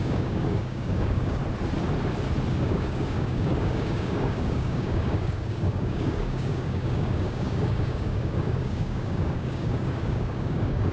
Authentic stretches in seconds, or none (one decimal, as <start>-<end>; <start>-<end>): 1.4-2.5